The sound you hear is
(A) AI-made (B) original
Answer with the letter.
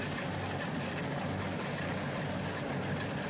B